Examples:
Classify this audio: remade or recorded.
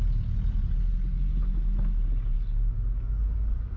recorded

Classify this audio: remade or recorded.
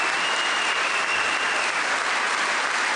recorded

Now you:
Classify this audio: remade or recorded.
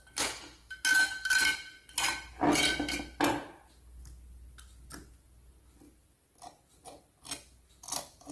recorded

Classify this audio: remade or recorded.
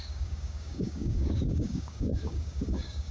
remade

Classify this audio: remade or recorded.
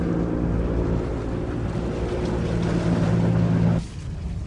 recorded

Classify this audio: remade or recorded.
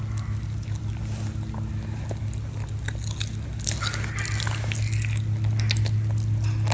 recorded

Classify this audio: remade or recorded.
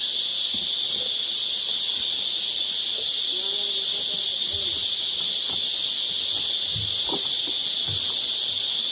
recorded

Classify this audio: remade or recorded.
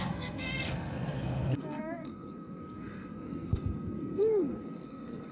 remade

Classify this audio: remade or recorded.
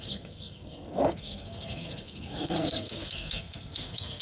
remade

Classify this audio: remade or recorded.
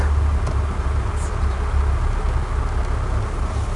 recorded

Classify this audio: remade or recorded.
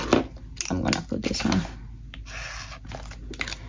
recorded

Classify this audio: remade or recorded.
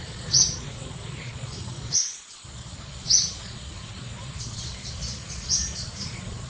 remade